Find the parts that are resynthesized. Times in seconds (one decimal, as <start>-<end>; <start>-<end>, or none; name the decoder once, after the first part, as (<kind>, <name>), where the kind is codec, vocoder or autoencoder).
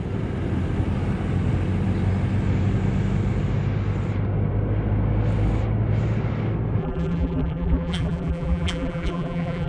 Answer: 6.8-9.7 (vocoder, BigVGAN v2)